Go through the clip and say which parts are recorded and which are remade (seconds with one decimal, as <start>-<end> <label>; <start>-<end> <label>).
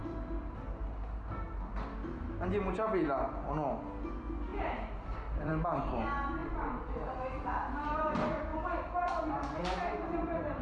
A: 0.0-4.5 recorded; 4.5-5.5 remade; 5.5-6.4 recorded; 6.4-8.0 remade; 8.0-8.5 recorded; 8.5-10.6 remade